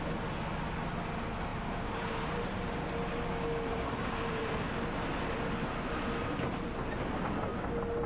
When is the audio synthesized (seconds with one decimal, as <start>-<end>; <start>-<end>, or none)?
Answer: 1.5-2.9; 3.7-4.5